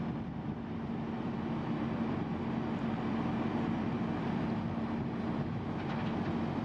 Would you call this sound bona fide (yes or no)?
yes